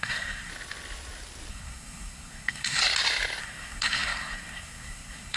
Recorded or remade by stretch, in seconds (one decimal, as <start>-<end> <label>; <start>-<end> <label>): 0.0-0.5 remade; 0.5-1.5 recorded; 1.5-2.8 remade; 2.8-3.4 recorded; 3.4-5.4 remade